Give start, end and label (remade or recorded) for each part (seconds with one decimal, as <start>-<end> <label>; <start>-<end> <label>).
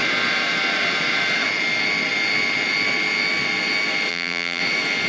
0.0-4.1 recorded; 4.1-4.6 remade; 4.6-5.1 recorded